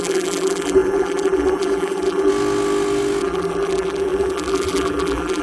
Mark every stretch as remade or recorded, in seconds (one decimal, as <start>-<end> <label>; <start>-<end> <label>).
0.0-2.3 remade; 2.3-3.2 recorded; 3.2-5.4 remade